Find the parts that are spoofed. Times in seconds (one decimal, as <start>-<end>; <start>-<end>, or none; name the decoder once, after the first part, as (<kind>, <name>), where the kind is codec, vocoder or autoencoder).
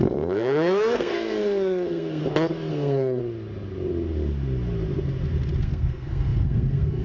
0.0-2.2 (codec, SNAC); 2.7-3.2; 5.6-7.0